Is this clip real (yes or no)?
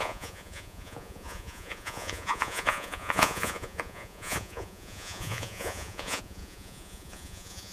no